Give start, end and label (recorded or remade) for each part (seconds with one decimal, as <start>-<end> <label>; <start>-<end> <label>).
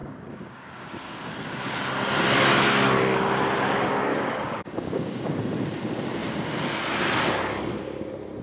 0.0-1.9 remade; 1.9-4.1 recorded; 4.1-5.4 remade; 5.4-8.4 recorded